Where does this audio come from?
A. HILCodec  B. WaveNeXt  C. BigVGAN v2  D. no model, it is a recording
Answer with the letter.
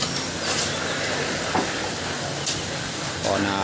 D